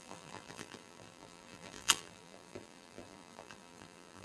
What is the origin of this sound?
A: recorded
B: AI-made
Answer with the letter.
B